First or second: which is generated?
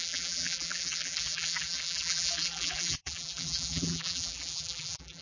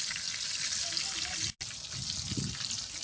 first